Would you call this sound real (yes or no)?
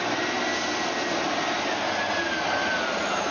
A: yes